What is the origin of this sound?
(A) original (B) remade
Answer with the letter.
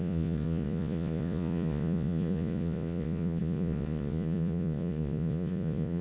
B